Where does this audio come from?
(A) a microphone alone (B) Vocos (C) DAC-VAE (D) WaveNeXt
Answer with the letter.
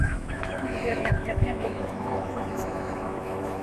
C